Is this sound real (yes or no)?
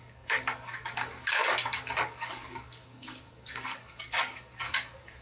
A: no